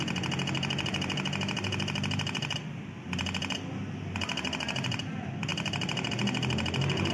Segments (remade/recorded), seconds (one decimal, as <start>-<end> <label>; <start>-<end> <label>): 0.0-7.1 recorded